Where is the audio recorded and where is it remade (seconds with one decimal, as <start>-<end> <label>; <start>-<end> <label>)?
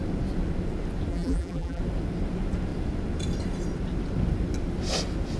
0.0-1.1 recorded; 1.1-1.8 remade; 1.8-5.4 recorded